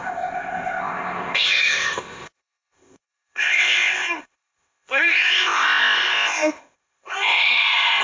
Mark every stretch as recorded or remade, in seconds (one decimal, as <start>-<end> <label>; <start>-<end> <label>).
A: 0.0-8.0 remade